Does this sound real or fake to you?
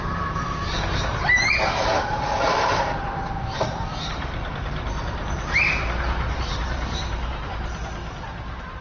fake